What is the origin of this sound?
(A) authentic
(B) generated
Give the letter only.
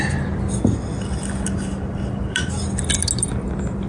A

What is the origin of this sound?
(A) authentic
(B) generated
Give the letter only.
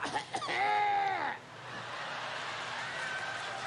A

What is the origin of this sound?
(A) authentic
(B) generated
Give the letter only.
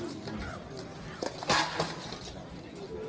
A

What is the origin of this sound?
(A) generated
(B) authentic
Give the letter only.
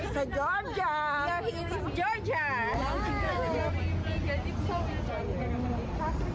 B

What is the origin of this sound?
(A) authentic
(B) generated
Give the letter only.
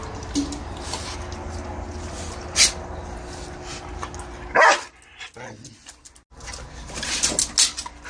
A